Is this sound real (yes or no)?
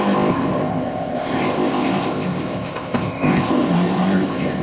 no